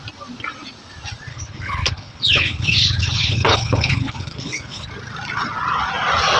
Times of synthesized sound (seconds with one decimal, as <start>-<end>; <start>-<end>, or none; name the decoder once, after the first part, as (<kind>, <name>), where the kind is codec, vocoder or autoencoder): 1.3-4.9 (codec, HILCodec)